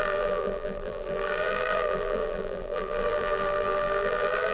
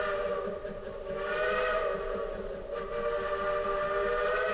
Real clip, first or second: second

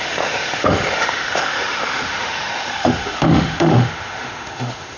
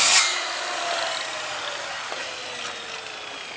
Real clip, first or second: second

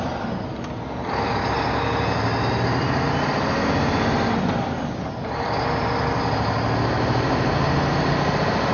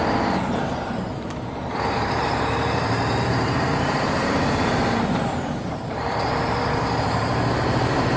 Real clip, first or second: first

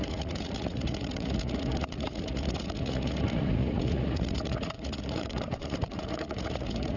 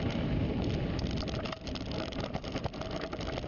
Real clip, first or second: second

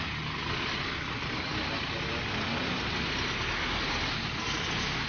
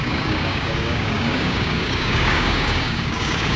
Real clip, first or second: first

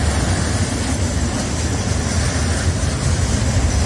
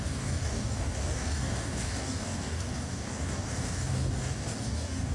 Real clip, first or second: first